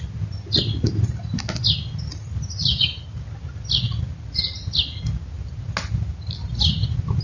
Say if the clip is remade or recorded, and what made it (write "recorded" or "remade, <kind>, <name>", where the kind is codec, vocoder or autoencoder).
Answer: recorded